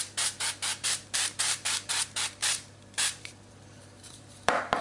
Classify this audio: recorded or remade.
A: remade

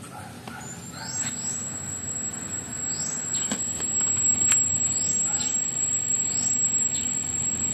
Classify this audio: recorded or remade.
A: remade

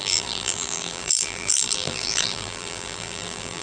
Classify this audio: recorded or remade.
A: remade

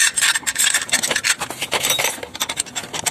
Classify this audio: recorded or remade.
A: recorded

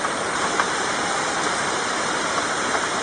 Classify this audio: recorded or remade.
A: remade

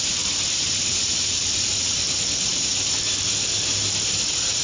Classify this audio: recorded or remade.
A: remade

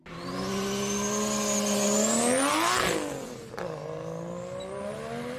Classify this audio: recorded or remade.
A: recorded